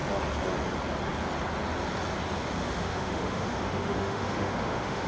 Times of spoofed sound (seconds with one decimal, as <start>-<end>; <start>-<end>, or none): 2.6-5.1